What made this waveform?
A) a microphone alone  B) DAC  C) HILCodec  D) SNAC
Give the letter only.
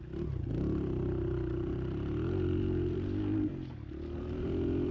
A